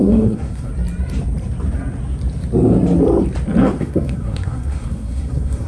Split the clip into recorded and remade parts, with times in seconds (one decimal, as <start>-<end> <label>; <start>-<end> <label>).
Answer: 0.0-0.7 remade; 0.7-3.8 recorded; 3.8-5.7 remade